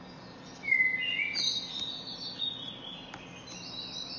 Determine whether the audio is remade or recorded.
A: recorded